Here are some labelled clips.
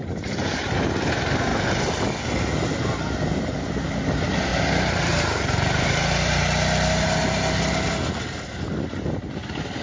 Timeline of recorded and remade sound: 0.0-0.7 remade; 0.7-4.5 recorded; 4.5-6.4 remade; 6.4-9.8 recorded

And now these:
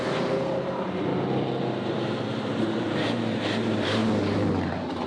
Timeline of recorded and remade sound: 0.0-1.1 remade; 1.1-1.6 recorded; 1.6-4.0 remade; 4.0-4.6 recorded; 4.6-5.1 remade

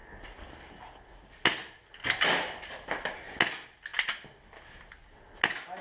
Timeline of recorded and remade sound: 0.0-5.8 recorded

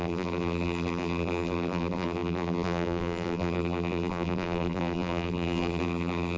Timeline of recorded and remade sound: 0.0-6.4 remade

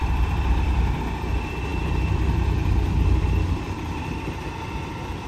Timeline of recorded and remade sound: 0.0-5.3 remade

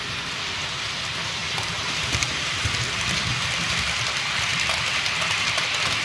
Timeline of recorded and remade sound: 0.0-1.4 recorded; 1.4-2.9 remade; 2.9-6.0 recorded

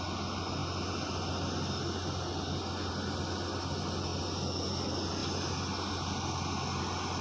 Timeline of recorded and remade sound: 0.0-7.2 recorded

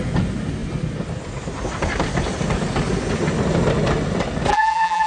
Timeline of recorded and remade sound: 0.0-4.5 recorded; 4.5-5.1 remade